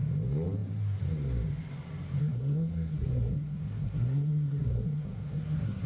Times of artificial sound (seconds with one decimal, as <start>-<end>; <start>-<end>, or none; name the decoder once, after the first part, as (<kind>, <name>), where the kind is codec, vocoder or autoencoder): 2.2-5.9 (codec, SNAC)